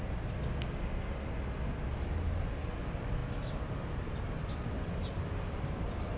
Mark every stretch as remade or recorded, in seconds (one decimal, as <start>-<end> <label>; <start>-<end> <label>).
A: 0.0-6.2 recorded